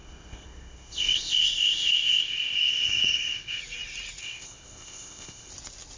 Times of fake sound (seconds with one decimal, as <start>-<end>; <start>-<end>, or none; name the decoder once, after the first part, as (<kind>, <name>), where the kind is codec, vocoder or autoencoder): 0.0-3.6 (codec, ZipCodec); 4.2-5.5